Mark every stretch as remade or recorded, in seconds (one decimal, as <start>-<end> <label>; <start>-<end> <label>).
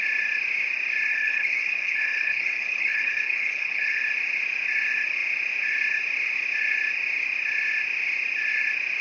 0.0-1.1 recorded; 1.1-4.0 remade; 4.0-9.0 recorded